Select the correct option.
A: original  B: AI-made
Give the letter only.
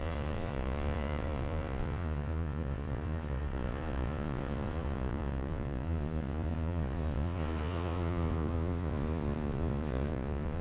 B